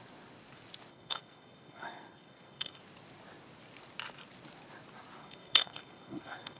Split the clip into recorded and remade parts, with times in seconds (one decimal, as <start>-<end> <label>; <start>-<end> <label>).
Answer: 0.0-0.9 recorded; 0.9-2.8 remade; 2.8-5.2 recorded; 5.2-6.6 remade

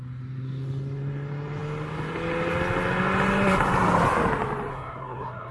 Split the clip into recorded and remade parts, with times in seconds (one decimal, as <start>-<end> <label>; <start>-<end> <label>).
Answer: 0.0-4.7 recorded; 4.7-5.5 remade

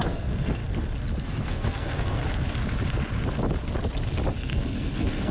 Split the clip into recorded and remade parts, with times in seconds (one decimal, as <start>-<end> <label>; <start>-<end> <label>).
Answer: 0.0-0.6 remade; 0.6-1.2 recorded; 1.2-2.2 remade; 2.2-4.4 recorded; 4.4-5.3 remade

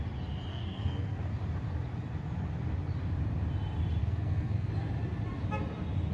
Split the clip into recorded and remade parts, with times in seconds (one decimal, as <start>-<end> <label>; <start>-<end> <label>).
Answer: 0.0-0.5 recorded; 0.5-1.2 remade; 1.2-4.0 recorded; 4.0-4.7 remade; 4.7-6.1 recorded